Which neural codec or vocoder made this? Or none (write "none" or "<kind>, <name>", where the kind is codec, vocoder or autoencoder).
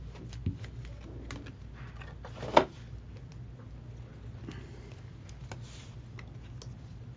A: none